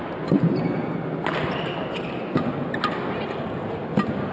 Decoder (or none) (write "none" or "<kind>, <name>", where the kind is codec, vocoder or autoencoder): none